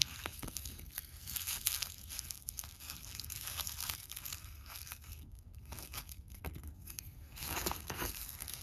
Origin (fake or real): fake